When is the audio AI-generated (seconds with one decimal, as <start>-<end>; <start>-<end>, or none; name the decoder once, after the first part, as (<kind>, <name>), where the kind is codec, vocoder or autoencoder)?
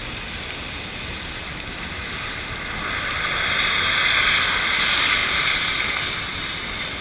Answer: none